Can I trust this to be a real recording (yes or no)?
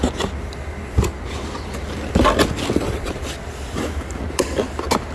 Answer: yes